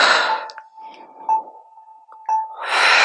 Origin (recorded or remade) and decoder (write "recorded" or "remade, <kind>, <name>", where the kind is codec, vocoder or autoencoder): recorded